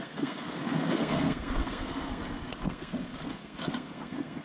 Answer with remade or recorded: remade